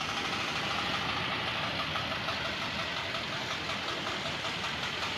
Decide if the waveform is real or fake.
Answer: real